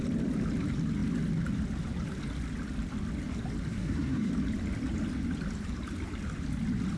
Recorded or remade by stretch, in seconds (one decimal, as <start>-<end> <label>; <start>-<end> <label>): 0.0-3.7 recorded; 3.7-4.3 remade; 4.3-7.0 recorded